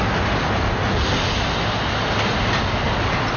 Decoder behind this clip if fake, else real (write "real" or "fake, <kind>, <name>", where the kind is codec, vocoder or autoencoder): real